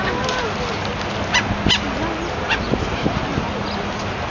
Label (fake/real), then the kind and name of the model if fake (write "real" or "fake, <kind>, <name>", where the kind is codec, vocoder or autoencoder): real